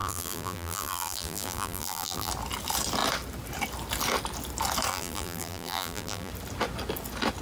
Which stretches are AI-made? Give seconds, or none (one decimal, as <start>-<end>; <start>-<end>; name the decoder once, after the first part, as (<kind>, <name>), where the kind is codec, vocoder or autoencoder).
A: 0.0-2.3 (vocoder, BigVGAN v2); 4.9-6.3